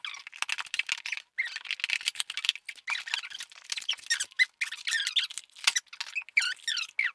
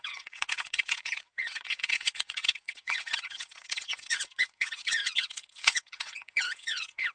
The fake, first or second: second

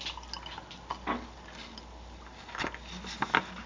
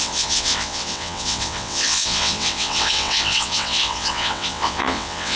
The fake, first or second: second